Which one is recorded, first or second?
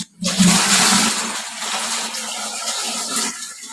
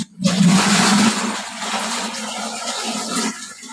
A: first